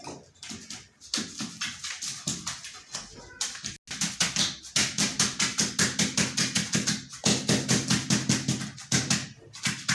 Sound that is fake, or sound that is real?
real